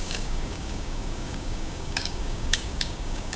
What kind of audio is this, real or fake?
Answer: fake